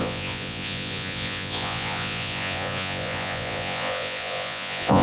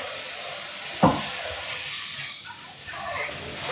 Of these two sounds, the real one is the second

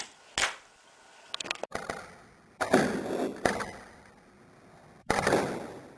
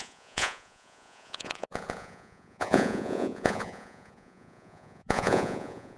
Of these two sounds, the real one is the first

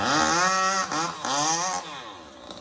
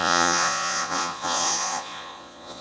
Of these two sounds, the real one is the first